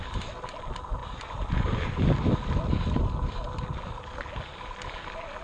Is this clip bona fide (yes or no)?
yes